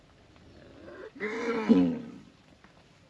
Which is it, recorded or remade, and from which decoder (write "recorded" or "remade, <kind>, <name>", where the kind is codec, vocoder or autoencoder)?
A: remade, vocoder, BigVGAN v2